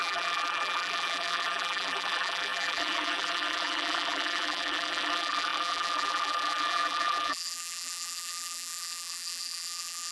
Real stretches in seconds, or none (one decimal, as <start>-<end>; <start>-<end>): none